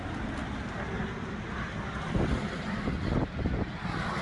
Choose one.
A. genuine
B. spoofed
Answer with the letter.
A